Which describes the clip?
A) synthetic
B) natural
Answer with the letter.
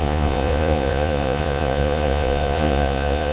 A